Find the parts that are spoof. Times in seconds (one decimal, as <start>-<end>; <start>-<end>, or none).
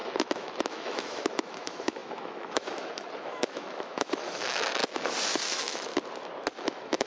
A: 0.0-4.8; 5.5-5.9; 6.6-7.1